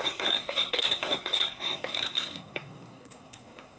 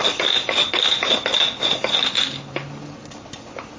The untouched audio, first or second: second